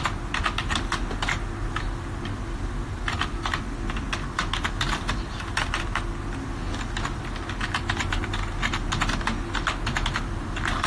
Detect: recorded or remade recorded